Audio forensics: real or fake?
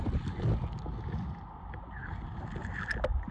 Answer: real